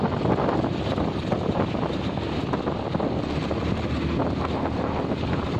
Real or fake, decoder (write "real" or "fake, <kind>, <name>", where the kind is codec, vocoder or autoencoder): real